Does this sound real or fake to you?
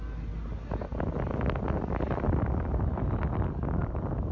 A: real